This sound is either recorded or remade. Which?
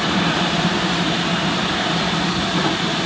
remade